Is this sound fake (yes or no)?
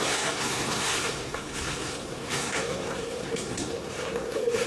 yes